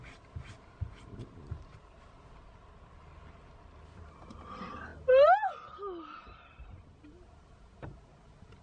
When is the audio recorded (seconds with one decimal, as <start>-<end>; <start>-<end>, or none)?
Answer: 0.0-1.5; 2.2-8.6